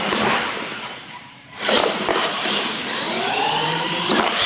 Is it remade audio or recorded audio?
remade